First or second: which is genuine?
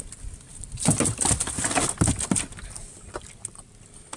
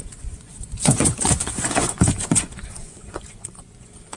first